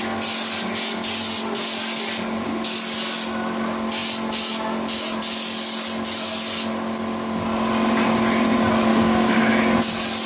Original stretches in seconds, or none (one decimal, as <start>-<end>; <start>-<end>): 0.0-8.9; 9.5-10.3